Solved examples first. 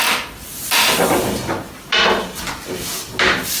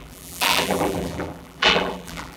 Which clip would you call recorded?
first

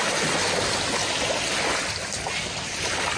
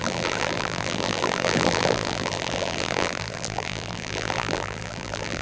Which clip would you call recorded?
first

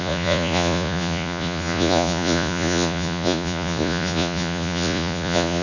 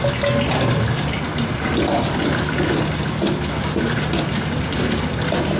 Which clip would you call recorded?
second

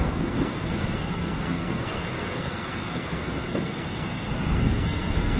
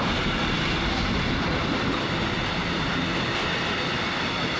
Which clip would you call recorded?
second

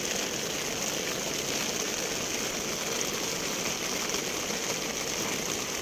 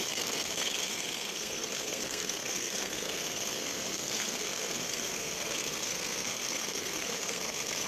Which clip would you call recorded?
first